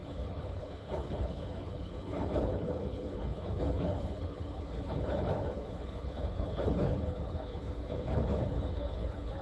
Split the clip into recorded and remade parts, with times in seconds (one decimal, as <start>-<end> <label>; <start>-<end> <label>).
0.0-9.4 remade